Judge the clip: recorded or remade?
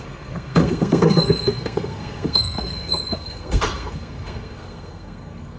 remade